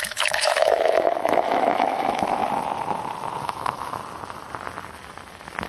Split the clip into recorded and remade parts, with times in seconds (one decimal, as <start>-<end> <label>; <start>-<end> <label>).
0.0-2.4 remade; 2.4-3.4 recorded; 3.4-4.0 remade; 4.0-5.7 recorded